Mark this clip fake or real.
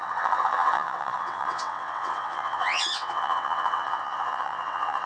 fake